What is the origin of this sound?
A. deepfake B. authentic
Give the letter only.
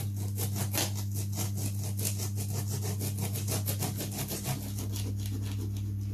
B